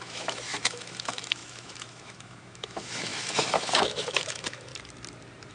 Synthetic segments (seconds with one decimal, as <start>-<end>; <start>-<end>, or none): 0.0-4.7